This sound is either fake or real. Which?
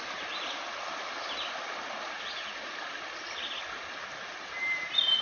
real